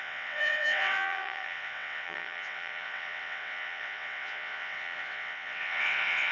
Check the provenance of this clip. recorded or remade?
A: remade